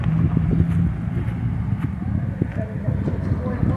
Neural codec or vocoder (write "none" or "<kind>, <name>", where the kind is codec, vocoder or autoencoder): none